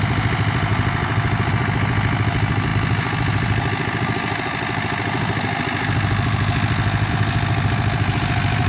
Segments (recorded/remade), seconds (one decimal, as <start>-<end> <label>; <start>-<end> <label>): 0.0-8.7 recorded